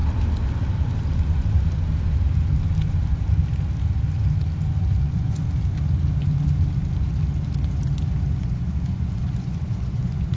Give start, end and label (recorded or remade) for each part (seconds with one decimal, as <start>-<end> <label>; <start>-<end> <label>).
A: 0.0-5.0 recorded; 5.0-5.4 remade; 5.4-8.4 recorded; 8.4-10.4 remade